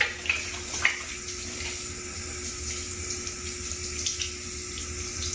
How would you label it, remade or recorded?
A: recorded